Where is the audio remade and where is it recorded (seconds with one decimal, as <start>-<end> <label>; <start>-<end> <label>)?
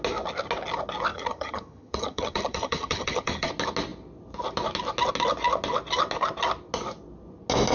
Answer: 0.0-1.1 recorded; 1.1-3.5 remade; 3.5-7.7 recorded